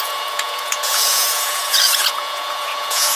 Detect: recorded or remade remade